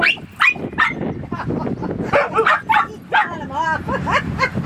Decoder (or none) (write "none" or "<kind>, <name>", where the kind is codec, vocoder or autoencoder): none